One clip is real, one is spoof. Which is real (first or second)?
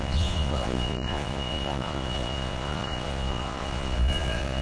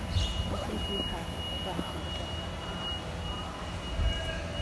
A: second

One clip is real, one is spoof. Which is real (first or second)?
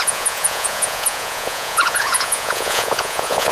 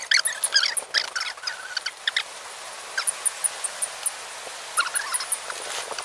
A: second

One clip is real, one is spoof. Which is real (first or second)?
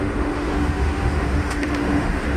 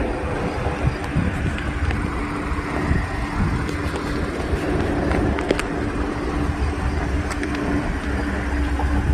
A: second